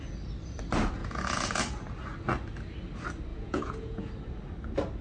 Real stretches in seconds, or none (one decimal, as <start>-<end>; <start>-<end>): 0.0-1.0; 1.6-3.3; 4.1-5.0